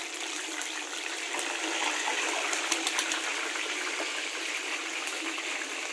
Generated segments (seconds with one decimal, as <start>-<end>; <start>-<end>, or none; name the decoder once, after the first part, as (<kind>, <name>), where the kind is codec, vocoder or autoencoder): none